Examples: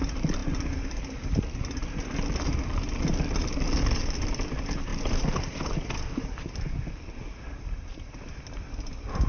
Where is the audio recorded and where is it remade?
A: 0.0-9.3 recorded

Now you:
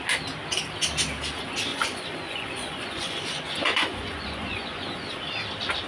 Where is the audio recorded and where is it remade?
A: 0.0-1.7 recorded; 1.7-5.2 remade; 5.2-5.9 recorded

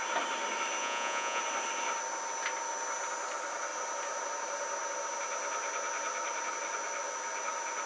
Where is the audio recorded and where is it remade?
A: 0.0-0.8 recorded; 0.8-1.4 remade; 1.4-7.9 recorded

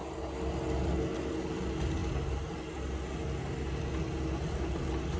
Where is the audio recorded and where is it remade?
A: 0.0-5.2 recorded

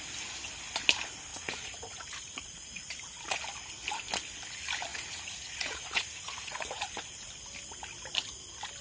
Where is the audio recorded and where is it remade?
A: 0.0-1.3 recorded; 1.3-3.2 remade; 3.2-4.9 recorded; 4.9-7.3 remade; 7.3-8.8 recorded